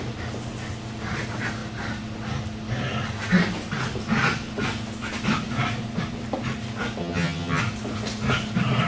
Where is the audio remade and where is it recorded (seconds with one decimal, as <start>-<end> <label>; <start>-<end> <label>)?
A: 0.0-7.0 recorded; 7.0-7.6 remade; 7.6-8.9 recorded

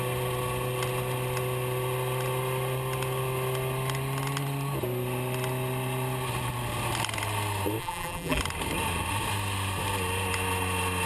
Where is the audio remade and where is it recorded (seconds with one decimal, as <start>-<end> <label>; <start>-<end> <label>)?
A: 0.0-7.8 recorded; 7.8-8.4 remade; 8.4-11.1 recorded

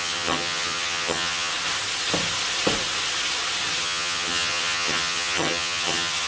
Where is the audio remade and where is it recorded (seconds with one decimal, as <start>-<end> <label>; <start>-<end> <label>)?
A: 0.0-1.5 remade; 1.5-3.8 recorded; 3.8-6.3 remade

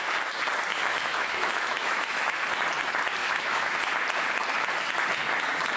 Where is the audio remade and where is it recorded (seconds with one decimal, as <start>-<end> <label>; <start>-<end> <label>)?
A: 0.0-0.7 recorded; 0.7-2.4 remade; 2.4-3.2 recorded; 3.2-3.8 remade; 3.8-5.8 recorded

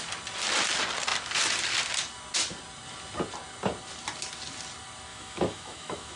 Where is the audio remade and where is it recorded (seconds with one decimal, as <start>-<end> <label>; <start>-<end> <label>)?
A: 0.0-5.1 recorded; 5.1-6.2 remade

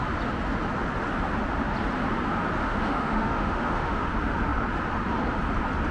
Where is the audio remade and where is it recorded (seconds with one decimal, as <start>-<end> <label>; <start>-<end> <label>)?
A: 0.0-2.6 recorded; 2.6-4.1 remade; 4.1-5.9 recorded

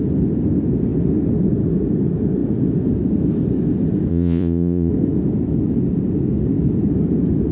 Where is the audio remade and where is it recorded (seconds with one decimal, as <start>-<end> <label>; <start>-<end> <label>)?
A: 0.0-4.1 recorded; 4.1-4.9 remade; 4.9-7.5 recorded